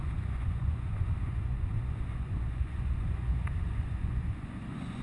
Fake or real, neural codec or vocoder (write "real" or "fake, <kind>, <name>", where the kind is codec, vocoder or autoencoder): fake, vocoder, Vocos